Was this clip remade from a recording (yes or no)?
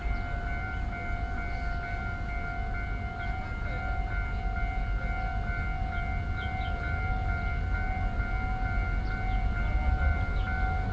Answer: no